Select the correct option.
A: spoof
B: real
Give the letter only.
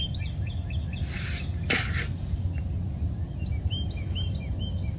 B